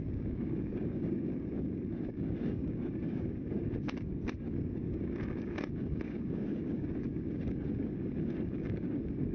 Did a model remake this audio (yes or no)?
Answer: yes